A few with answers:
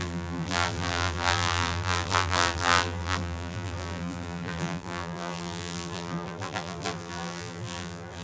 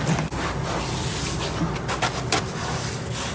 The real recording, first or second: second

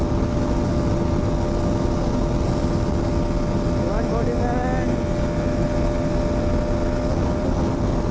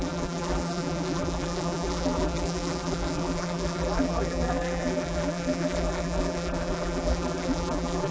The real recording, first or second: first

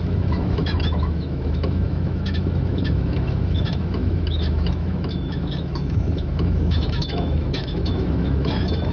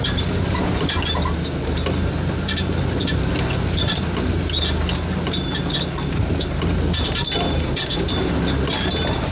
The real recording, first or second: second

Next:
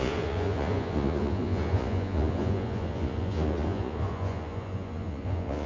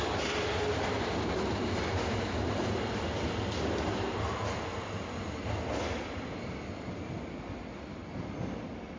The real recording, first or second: second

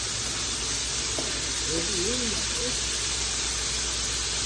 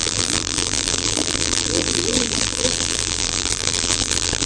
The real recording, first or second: first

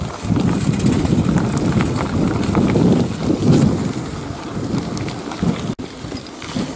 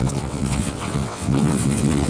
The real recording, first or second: first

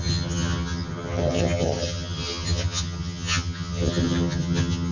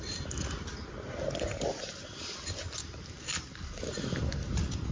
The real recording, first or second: second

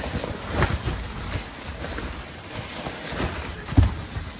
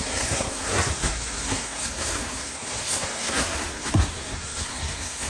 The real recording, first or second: first